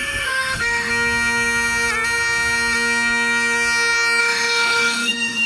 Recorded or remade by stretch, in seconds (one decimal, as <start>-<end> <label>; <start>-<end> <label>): 0.0-0.9 remade; 0.9-4.2 recorded; 4.2-5.5 remade